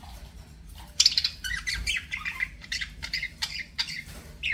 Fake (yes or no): yes